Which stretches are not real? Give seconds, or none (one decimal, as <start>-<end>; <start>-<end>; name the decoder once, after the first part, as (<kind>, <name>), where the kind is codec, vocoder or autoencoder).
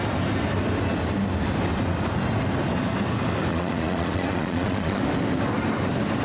3.5-5.0 (vocoder, Vocos)